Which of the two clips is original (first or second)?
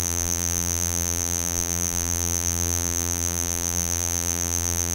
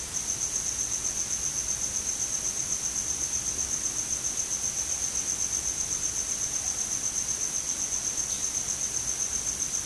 second